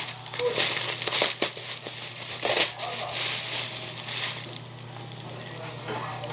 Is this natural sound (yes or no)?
yes